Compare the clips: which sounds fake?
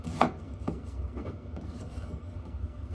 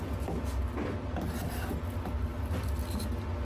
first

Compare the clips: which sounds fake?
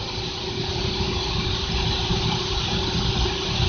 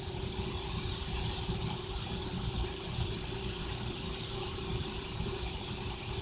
second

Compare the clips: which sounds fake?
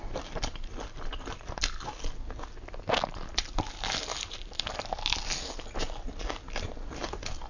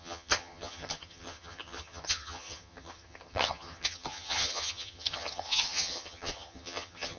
second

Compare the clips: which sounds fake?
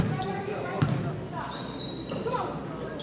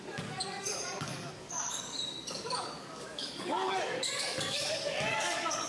second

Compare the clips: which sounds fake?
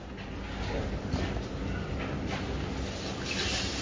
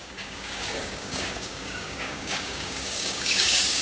second